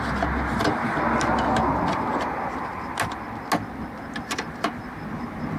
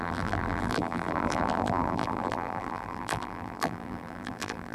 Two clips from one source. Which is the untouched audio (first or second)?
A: first